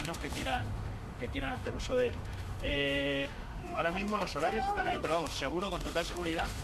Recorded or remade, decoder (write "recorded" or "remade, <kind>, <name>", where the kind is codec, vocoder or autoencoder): remade, autoencoder, DAC-VAE